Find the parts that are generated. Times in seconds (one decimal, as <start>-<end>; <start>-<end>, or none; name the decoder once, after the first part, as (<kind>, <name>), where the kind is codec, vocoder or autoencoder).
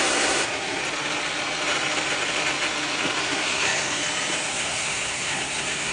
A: 0.0-0.8 (codec, SNAC); 3.2-4.0; 4.5-5.9